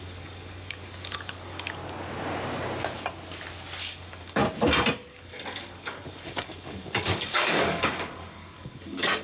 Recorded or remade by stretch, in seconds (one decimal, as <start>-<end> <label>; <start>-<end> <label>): 0.0-1.8 remade; 1.8-3.8 recorded; 3.8-4.4 remade; 4.4-5.1 recorded; 5.1-9.2 remade